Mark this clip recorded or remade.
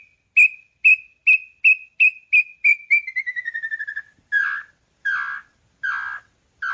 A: recorded